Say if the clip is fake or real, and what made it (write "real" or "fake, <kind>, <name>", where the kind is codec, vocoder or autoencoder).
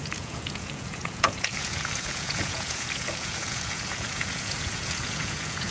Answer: fake, vocoder, Vocos